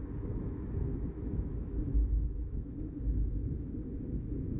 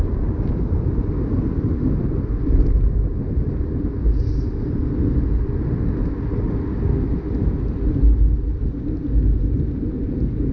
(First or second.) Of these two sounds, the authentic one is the second